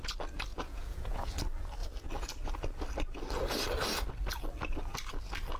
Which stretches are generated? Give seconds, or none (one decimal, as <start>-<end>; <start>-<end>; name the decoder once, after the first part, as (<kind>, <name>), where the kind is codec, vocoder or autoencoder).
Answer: 0.5-1.4 (vocoder, Vocos)